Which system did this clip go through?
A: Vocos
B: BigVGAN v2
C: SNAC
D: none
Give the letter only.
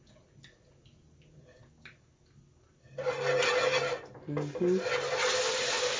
D